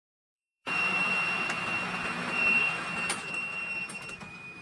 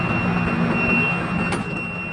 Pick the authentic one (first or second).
second